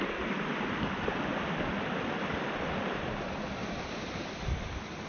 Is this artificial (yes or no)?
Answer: no